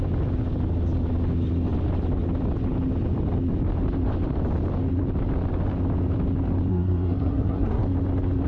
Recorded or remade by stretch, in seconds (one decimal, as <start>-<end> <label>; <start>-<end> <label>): 0.0-6.7 recorded; 6.7-7.8 remade; 7.8-8.5 recorded